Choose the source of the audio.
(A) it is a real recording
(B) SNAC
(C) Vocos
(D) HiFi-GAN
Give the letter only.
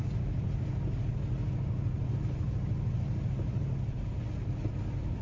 A